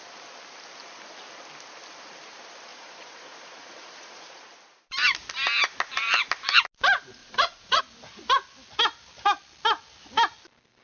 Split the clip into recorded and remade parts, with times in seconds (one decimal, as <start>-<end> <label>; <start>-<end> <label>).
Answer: 0.0-2.7 recorded; 2.7-4.4 remade; 4.4-7.2 recorded; 7.2-7.8 remade; 7.8-10.8 recorded